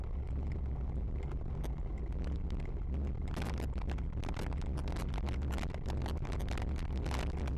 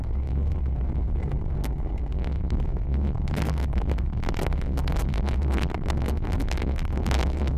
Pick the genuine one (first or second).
first